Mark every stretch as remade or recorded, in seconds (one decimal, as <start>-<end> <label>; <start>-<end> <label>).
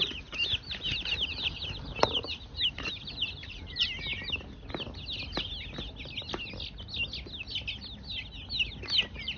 0.0-4.1 remade; 4.1-9.0 recorded; 9.0-9.4 remade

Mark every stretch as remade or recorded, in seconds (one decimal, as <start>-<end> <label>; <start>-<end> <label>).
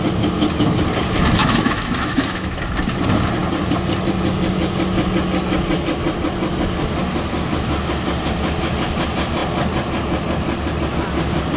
0.0-1.4 recorded; 1.4-2.6 remade; 2.6-11.6 recorded